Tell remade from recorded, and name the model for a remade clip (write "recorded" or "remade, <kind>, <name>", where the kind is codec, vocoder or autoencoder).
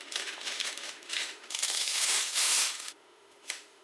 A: remade, autoencoder, DAC-VAE